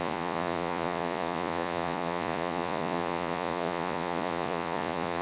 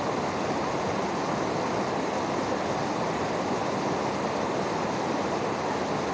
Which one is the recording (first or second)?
second